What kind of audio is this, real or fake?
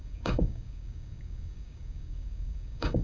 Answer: fake